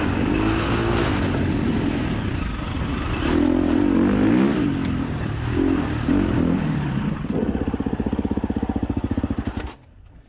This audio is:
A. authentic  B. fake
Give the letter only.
A